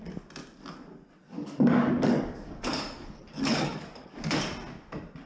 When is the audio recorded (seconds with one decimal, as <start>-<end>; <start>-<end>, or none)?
0.0-1.2; 4.4-5.3